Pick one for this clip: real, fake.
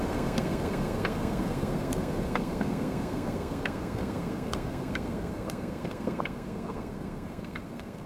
fake